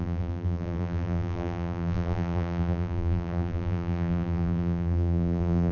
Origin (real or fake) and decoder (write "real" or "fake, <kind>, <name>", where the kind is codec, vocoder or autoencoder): fake, vocoder, BigVGAN v2